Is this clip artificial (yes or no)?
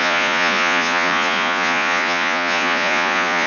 yes